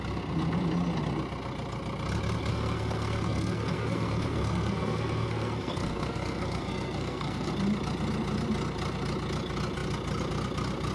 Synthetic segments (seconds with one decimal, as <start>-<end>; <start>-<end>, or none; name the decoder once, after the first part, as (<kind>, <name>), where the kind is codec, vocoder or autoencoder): 2.5-7.5 (codec, SNAC)